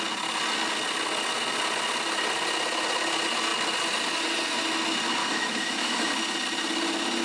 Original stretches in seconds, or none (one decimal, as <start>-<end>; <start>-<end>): 0.0-5.2; 6.1-7.2